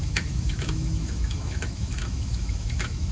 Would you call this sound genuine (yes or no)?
no